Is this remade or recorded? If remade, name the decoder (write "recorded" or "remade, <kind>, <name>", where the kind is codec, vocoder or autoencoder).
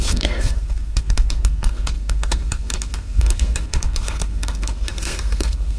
remade, codec, SNAC